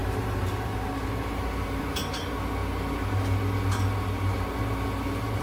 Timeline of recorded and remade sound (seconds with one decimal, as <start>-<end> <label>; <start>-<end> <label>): 0.0-1.8 remade; 1.8-5.4 recorded